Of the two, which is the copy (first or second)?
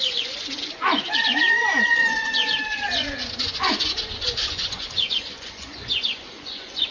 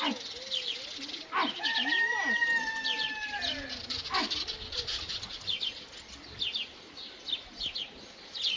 first